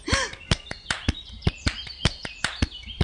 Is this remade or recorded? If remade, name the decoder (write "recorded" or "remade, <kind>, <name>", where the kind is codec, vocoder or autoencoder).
recorded